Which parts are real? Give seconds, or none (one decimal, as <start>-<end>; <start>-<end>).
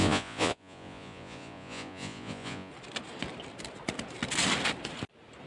2.7-5.5